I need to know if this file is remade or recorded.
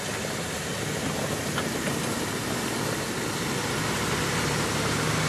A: recorded